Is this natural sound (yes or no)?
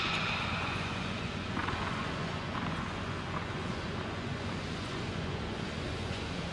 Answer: no